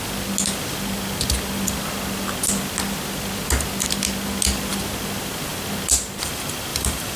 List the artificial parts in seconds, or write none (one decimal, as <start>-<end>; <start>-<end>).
6.7-7.2

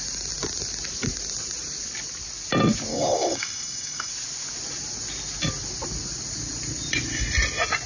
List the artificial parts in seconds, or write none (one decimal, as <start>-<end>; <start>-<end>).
2.9-4.1

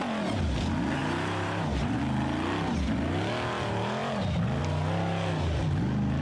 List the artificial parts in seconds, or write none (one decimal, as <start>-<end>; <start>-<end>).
1.0-2.0

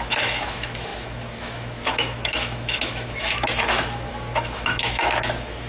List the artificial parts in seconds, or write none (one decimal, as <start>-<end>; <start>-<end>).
0.0-5.7

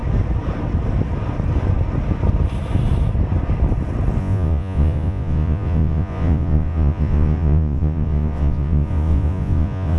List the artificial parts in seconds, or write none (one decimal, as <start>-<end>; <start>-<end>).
4.2-10.0

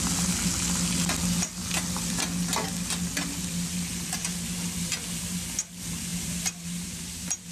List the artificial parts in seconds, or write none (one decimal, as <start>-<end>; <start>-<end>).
6.1-7.0

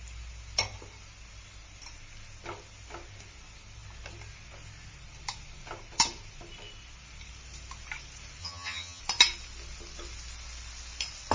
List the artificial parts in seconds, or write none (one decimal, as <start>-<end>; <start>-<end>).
8.4-9.0

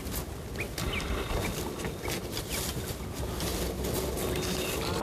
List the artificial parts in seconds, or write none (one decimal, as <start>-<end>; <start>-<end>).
none